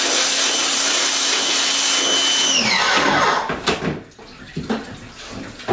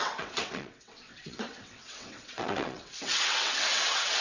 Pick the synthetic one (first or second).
second